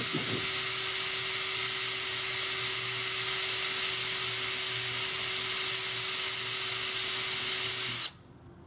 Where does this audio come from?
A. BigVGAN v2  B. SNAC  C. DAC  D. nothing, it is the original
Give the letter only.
D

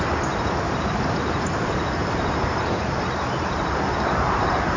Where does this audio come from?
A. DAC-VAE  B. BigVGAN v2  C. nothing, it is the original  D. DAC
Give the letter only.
B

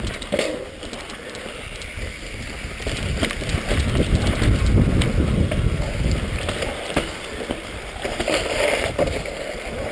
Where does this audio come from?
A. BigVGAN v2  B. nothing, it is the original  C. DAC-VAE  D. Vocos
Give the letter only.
A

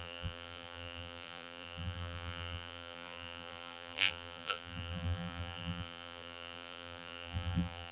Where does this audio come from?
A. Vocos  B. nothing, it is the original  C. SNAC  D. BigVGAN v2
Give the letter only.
D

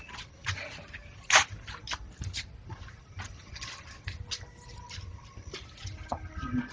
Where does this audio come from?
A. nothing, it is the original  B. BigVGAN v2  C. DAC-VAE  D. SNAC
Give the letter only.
A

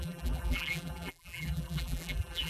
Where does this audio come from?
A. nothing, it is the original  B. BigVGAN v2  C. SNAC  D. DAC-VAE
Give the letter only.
B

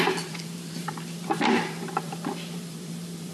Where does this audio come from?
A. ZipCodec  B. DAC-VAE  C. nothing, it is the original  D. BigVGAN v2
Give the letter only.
D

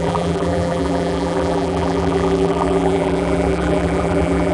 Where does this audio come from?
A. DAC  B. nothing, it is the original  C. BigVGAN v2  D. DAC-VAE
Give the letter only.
C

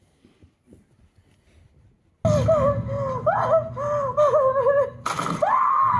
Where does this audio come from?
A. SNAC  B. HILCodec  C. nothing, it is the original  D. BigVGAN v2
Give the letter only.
C